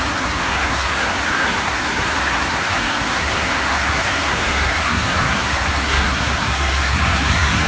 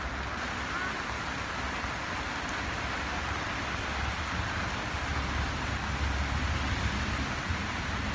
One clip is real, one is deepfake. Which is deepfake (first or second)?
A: first